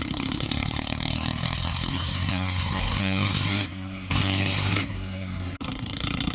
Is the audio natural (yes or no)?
no